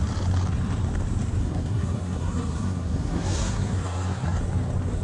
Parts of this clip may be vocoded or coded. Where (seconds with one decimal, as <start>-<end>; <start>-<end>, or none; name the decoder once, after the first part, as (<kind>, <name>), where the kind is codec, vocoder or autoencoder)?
1.4-4.4 (codec, SNAC)